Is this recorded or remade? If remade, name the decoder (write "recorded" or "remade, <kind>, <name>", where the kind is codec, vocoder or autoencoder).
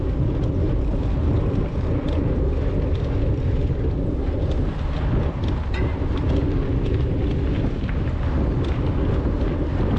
recorded